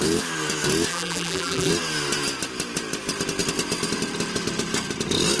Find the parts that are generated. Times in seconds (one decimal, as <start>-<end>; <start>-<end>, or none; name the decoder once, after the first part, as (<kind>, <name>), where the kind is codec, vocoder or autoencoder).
0.9-1.7 (vocoder, BigVGAN v2)